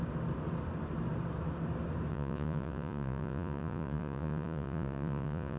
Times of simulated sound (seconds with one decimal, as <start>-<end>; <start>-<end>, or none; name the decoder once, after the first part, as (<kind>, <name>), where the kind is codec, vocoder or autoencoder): 2.1-5.6 (vocoder, Vocos)